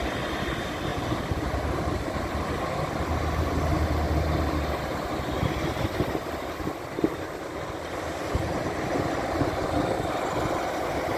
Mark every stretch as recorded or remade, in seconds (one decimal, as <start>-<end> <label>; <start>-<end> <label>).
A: 0.0-11.2 recorded